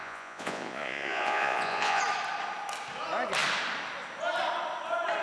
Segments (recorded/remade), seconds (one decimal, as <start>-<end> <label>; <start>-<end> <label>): 0.0-2.0 remade; 2.0-5.2 recorded